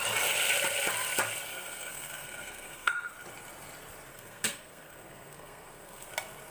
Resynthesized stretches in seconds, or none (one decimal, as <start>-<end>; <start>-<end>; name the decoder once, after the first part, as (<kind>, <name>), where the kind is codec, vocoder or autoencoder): 1.5-3.1 (codec, SNAC); 4.1-6.1